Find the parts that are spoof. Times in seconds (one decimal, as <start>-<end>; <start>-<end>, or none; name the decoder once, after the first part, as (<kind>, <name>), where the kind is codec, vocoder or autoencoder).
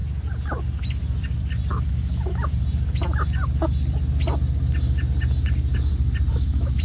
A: 1.9-2.5 (autoencoder, DAC-VAE); 6.3-6.8